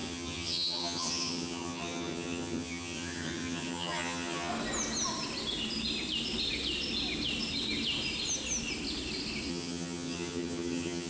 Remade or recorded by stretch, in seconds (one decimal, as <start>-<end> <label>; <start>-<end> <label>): 0.0-4.5 remade; 4.5-9.5 recorded; 9.5-11.1 remade